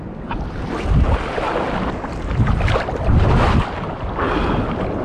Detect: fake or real real